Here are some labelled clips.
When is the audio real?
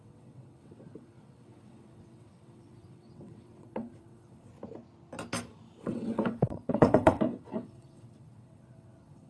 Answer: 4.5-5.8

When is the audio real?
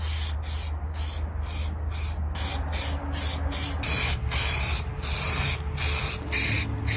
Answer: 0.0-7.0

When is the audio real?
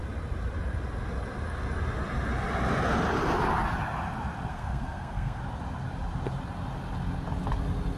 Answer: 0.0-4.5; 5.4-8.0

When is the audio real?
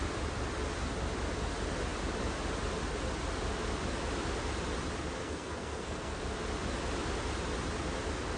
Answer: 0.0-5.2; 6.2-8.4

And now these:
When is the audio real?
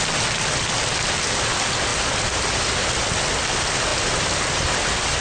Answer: 0.0-5.2